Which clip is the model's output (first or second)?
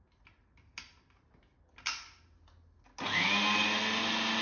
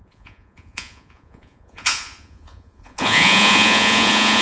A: second